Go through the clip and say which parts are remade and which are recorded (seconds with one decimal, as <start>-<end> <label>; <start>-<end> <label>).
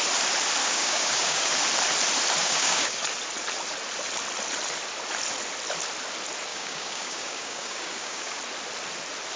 0.0-0.6 recorded; 0.6-1.5 remade; 1.5-2.4 recorded; 2.4-3.0 remade; 3.0-6.5 recorded; 6.5-8.4 remade; 8.4-9.4 recorded